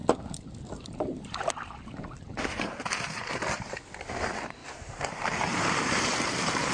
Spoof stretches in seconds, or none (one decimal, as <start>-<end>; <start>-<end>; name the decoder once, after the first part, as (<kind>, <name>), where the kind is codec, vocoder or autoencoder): 4.6-6.7 (vocoder, BigVGAN v2)